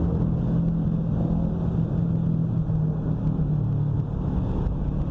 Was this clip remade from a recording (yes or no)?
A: no